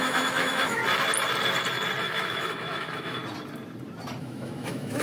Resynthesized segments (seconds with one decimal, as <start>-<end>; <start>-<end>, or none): 0.0-0.8; 2.0-3.2; 4.2-5.0